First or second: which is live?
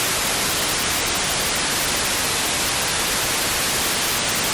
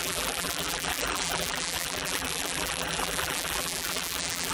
first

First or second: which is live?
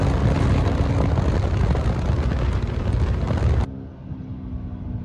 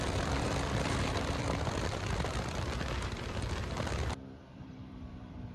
first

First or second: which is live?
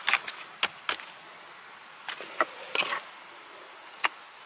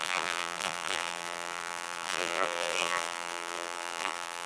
first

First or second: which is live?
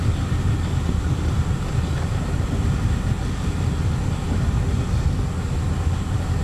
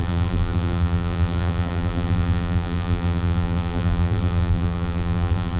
first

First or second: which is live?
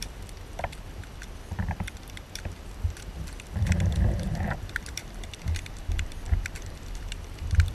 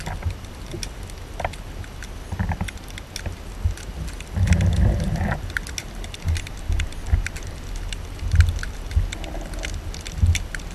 second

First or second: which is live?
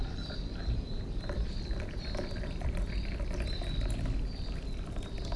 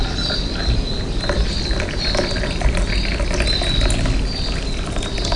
second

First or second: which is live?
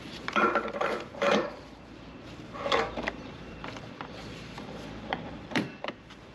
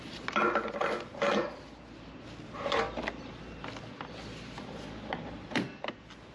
second